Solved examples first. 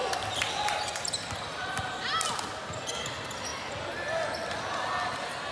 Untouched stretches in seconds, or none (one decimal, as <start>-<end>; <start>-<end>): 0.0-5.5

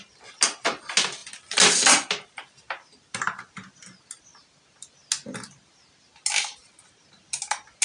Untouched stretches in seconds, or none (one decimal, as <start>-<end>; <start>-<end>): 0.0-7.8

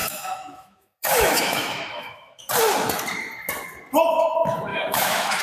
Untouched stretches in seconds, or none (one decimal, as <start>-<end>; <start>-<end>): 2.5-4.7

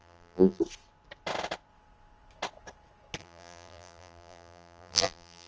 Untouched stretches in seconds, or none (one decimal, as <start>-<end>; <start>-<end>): 0.6-3.2